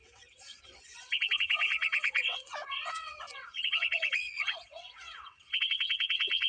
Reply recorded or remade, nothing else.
remade